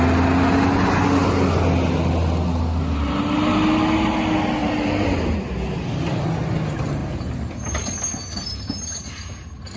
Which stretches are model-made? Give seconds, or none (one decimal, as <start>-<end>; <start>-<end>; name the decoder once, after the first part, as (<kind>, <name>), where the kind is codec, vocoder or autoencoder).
4.6-5.2 (vocoder, BigVGAN v2)